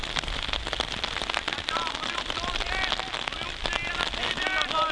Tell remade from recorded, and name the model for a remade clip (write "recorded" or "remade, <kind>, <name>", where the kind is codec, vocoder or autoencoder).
recorded